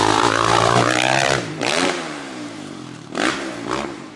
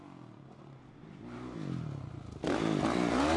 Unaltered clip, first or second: second